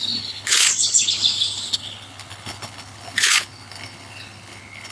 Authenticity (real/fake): fake